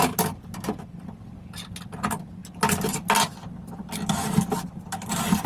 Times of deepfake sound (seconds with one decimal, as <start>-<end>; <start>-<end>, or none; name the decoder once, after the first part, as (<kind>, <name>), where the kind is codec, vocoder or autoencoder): none